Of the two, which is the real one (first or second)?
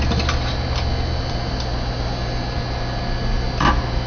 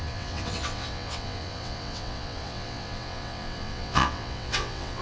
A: first